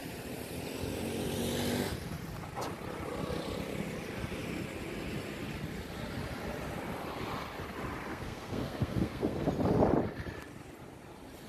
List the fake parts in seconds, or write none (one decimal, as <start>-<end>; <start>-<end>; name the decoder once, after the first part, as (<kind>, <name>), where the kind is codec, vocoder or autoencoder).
8.1-9.5 (codec, SNAC)